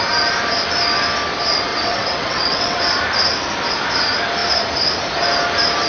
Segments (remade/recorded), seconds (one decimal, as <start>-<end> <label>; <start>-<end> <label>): 0.0-1.7 recorded; 1.7-2.8 remade; 2.8-5.9 recorded